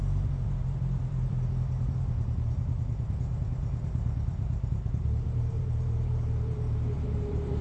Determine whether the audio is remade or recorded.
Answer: remade